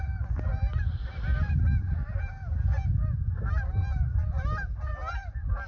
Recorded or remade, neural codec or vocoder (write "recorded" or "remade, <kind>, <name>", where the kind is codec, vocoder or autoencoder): recorded